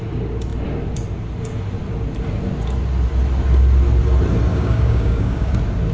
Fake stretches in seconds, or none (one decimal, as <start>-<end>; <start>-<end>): 4.5-5.5